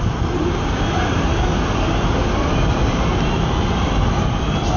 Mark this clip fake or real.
real